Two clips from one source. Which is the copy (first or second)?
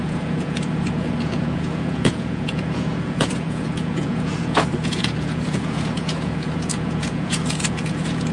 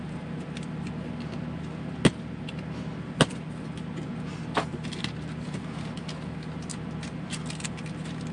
first